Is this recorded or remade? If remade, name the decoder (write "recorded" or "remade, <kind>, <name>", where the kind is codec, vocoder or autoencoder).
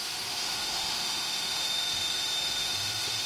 remade, autoencoder, DAC-VAE